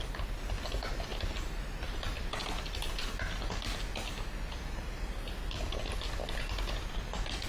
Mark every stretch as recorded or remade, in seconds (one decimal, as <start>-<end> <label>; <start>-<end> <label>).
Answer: 0.0-7.5 recorded